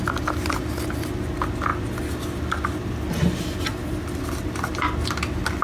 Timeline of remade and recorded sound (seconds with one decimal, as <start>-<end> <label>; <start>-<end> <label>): 0.0-5.6 recorded